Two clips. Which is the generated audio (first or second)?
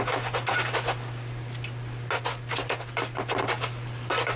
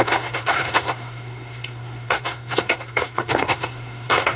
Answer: second